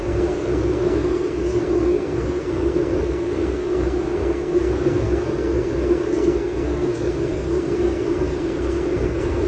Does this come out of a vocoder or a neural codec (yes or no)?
yes